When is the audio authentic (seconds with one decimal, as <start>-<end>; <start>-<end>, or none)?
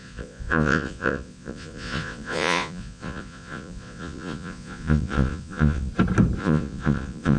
5.9-6.4